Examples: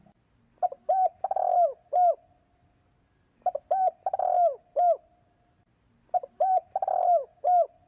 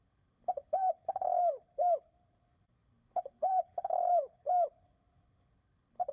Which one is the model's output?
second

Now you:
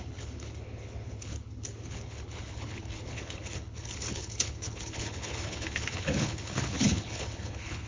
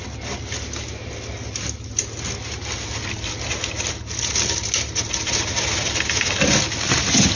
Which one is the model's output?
first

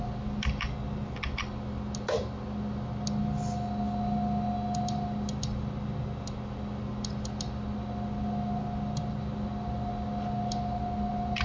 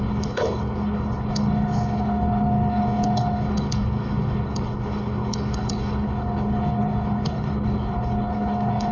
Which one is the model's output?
second